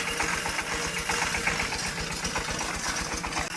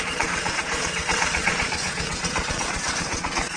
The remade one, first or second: second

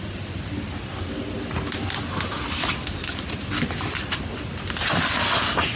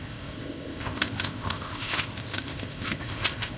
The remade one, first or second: second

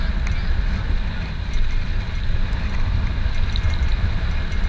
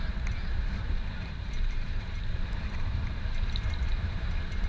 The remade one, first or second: second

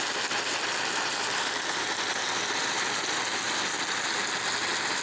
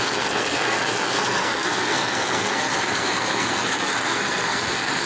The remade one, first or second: second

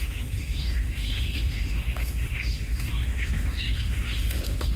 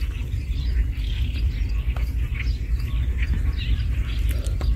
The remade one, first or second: first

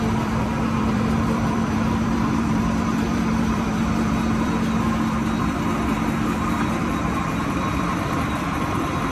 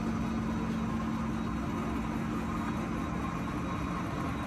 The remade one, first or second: first